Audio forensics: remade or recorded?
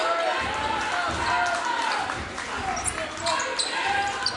recorded